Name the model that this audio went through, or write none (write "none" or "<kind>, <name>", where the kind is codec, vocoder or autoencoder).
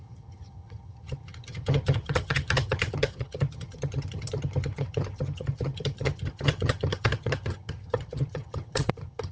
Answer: vocoder, HiFi-GAN